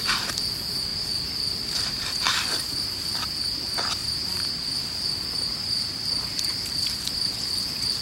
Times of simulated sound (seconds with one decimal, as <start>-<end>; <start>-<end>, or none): 0.9-2.6; 4.0-7.4